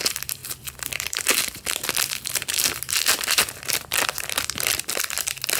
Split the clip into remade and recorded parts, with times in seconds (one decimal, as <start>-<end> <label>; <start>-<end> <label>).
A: 0.0-5.6 remade